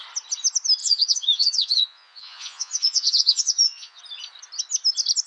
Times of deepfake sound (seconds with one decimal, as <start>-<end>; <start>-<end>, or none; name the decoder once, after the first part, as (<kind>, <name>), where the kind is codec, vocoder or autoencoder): 0.8-4.0 (vocoder, Vocos)